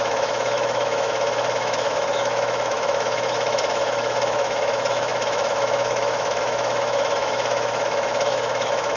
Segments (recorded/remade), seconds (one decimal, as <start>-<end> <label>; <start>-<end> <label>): 0.0-9.0 remade